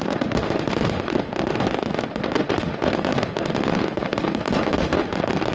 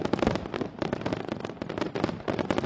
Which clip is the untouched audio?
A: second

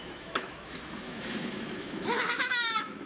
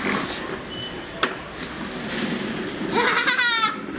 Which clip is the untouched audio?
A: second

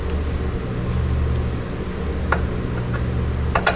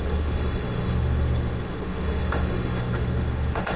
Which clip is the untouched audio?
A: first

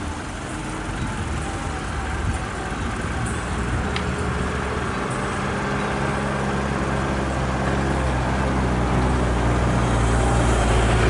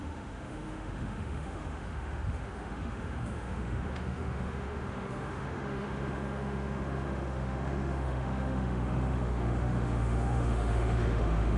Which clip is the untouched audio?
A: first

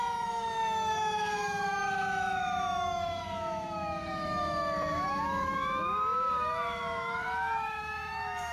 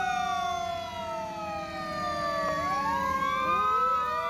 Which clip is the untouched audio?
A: second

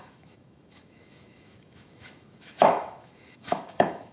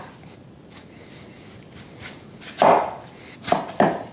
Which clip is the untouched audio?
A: second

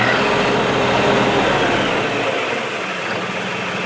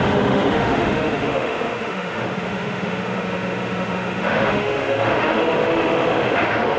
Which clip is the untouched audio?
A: first